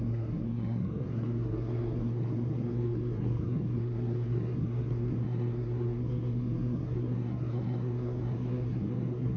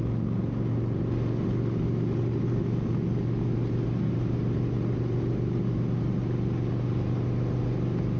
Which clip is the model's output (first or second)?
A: first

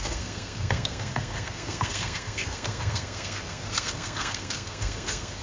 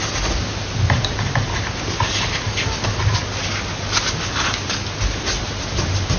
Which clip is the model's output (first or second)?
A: first